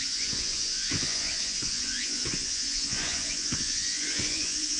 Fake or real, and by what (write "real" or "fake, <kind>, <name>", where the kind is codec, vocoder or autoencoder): fake, vocoder, Vocos